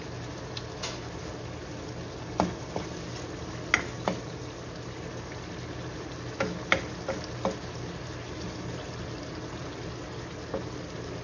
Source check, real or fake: real